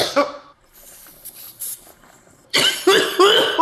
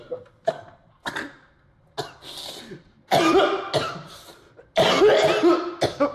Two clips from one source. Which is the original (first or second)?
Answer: second